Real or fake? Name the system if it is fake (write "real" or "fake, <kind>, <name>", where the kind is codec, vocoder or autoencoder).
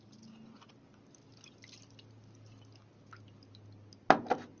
real